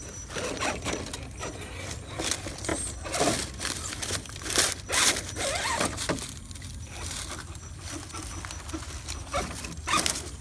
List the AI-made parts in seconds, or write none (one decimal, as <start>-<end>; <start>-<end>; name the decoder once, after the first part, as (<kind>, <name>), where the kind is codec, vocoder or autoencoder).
none